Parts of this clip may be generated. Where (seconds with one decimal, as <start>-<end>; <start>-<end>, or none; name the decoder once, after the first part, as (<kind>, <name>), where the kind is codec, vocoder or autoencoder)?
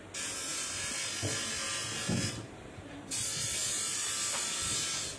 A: none